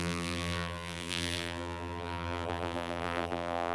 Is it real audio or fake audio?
fake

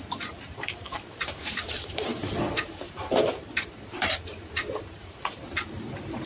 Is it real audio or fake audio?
fake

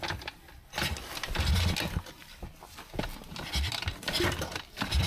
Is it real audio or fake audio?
real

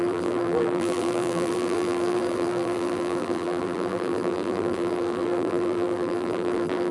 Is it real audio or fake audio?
fake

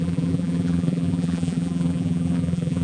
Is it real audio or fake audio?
fake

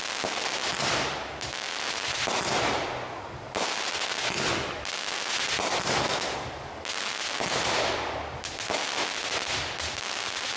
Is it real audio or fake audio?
real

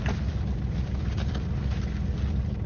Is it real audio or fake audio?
real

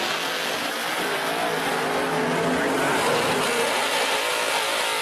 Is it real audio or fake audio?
real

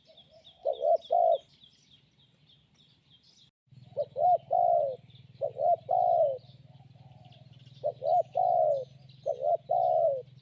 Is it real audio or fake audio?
real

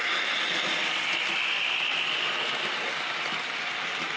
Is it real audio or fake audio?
real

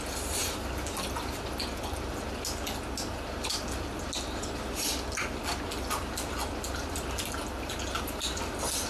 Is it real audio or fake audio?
real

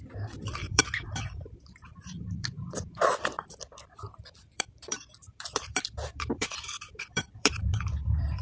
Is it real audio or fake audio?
fake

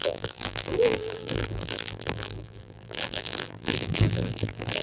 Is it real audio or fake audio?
fake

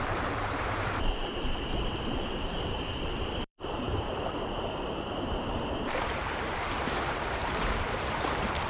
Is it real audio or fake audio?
fake